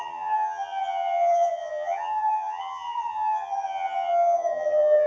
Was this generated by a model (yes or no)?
yes